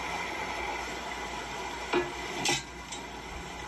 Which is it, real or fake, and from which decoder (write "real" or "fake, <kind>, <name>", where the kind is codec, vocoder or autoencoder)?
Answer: real